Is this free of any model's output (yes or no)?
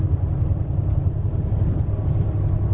yes